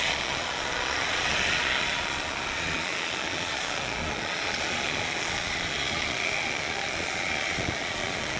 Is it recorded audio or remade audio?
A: remade